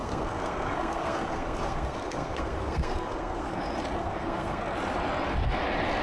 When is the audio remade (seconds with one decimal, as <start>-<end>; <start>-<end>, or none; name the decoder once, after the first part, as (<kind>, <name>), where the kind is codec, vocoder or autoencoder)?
0.0-3.6 (codec, SNAC); 4.0-4.6